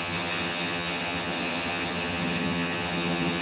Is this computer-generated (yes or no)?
yes